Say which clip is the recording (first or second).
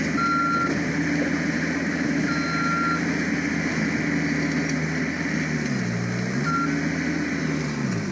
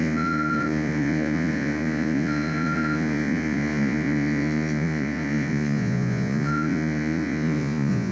first